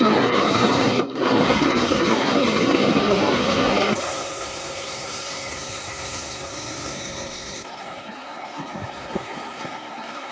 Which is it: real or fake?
fake